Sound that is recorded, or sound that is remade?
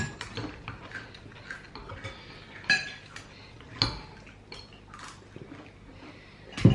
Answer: recorded